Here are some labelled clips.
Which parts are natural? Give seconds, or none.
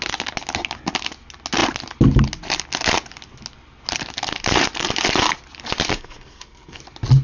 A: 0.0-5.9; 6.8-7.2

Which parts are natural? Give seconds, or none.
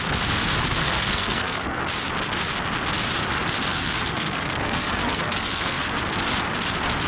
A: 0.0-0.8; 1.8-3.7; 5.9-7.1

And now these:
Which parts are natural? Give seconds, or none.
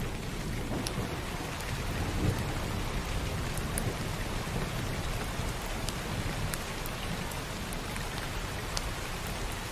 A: 0.0-9.7